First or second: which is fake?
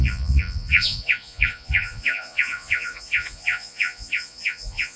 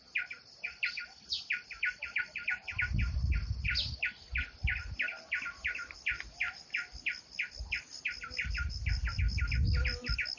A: first